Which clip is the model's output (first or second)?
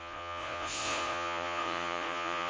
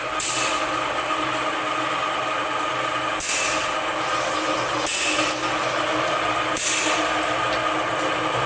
first